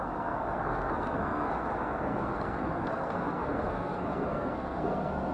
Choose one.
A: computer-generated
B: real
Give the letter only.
A